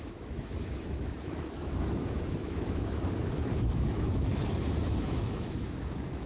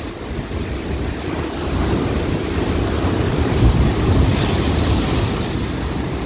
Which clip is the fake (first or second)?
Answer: first